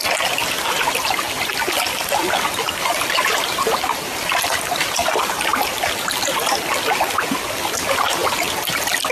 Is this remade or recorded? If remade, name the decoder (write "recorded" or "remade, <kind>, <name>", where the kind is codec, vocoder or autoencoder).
recorded